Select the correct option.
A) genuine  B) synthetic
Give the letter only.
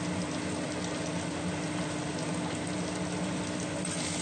A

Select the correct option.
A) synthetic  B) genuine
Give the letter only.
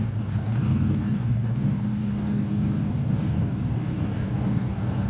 A